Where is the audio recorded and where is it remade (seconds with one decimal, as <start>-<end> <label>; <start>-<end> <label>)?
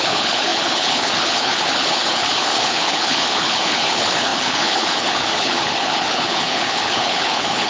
0.0-7.7 remade